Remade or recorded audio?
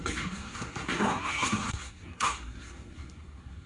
remade